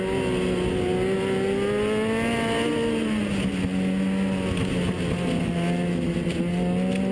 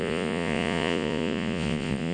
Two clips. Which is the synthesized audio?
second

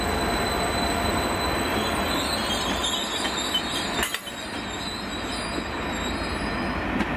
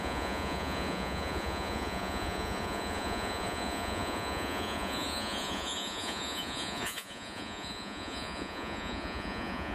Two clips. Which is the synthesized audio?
second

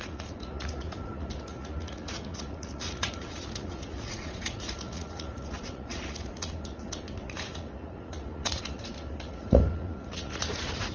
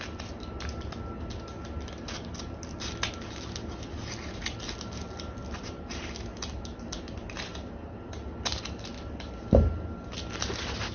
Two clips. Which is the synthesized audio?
first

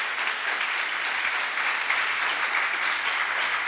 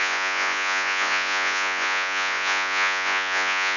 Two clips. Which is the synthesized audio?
second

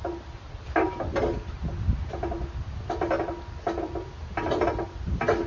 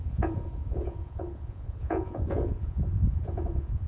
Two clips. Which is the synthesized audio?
second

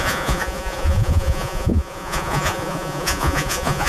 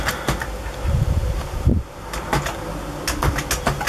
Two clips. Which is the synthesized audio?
first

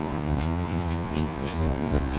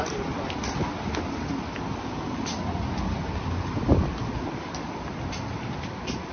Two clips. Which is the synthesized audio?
first